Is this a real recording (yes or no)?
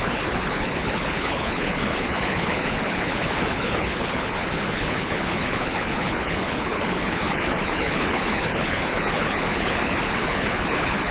no